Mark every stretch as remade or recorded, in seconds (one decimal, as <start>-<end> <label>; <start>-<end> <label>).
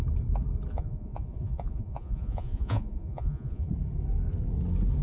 0.0-0.7 recorded; 0.7-3.7 remade; 3.7-5.0 recorded